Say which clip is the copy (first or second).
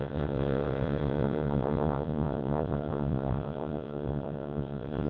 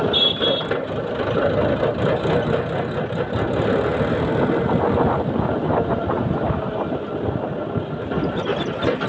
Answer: first